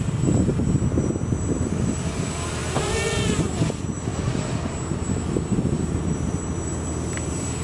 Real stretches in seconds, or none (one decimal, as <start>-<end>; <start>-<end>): 0.5-1.2; 2.6-3.6; 4.1-6.0